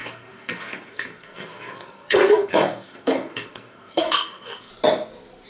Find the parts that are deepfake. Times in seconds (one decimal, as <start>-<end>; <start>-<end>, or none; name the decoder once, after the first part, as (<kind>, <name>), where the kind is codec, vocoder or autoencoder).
0.0-4.7 (codec, SNAC)

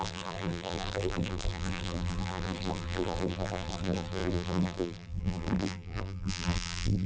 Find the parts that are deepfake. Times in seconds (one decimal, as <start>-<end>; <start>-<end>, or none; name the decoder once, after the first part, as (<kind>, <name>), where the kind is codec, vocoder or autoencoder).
0.0-7.1 (vocoder, BigVGAN v2)

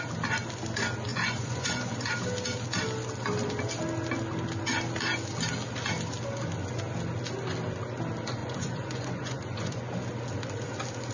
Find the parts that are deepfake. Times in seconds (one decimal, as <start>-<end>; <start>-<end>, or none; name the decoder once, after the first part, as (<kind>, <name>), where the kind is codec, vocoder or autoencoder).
1.1-1.8 (vocoder, Vocos); 8.4-9.9